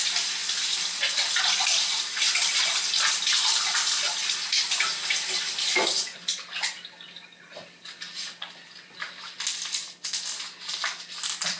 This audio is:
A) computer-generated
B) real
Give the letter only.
B